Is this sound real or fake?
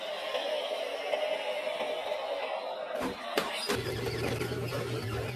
real